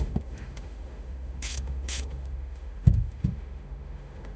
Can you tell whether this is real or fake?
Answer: fake